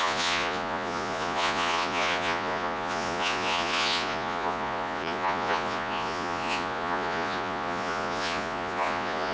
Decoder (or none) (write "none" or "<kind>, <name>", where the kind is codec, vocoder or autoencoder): vocoder, Vocos